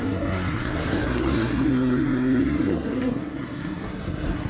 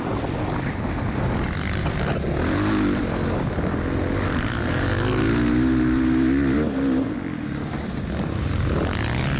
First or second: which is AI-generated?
first